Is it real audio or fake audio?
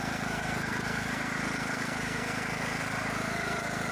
fake